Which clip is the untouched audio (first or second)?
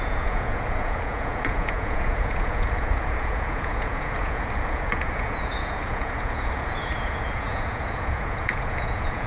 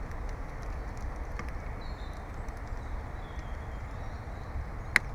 second